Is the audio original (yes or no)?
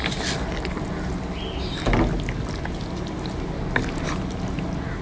yes